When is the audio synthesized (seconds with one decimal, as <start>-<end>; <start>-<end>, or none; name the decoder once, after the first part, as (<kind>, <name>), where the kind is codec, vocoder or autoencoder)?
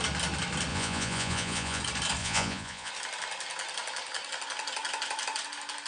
0.7-1.8 (vocoder, Vocos); 2.2-2.9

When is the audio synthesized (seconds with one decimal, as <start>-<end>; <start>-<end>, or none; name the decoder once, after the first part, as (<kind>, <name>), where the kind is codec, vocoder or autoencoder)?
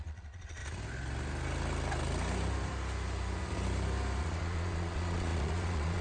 0.0-0.6 (vocoder, Vocos); 4.2-6.0